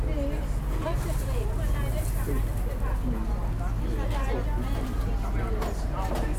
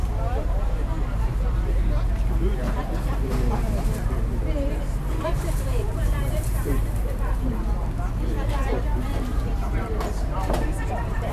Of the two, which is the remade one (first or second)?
second